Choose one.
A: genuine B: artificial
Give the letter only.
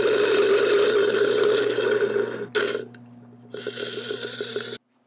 A